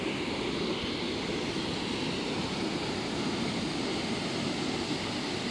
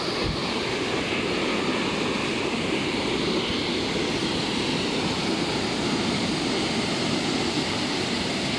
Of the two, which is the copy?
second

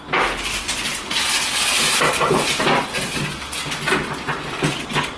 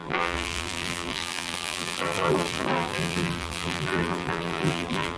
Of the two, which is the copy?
second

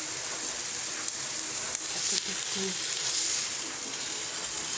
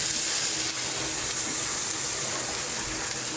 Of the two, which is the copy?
first